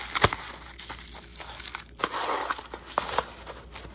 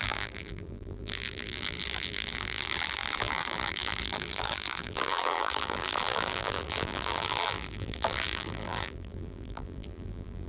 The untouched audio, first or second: first